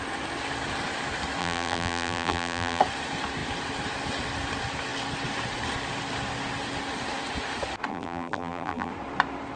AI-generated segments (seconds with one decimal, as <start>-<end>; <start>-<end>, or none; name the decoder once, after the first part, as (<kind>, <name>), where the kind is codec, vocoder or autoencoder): 1.4-2.8 (vocoder, BigVGAN v2); 7.9-8.9